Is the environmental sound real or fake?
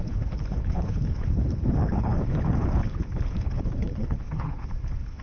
fake